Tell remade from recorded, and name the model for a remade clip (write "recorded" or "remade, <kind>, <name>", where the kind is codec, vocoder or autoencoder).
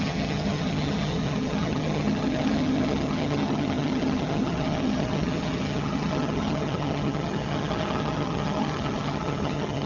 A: remade, vocoder, HiFi-GAN